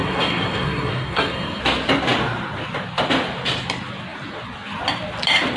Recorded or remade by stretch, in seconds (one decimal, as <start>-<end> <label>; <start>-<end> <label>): 0.0-1.6 remade; 1.6-5.6 recorded